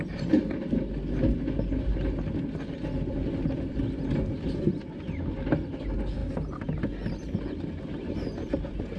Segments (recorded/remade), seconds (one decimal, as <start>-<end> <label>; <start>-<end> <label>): 0.0-9.0 recorded